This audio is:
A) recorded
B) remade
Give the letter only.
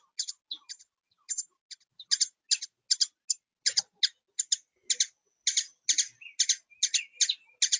A